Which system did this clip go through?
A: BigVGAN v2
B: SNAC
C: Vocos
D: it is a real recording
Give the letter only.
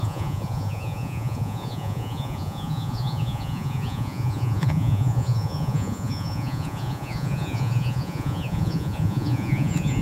C